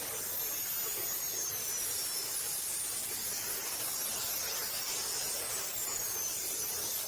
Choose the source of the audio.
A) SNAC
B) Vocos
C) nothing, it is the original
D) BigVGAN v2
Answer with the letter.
C